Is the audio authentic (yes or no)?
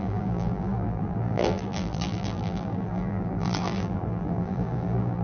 no